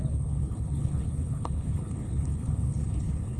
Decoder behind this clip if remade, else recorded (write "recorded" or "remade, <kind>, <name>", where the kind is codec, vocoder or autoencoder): remade, codec, HILCodec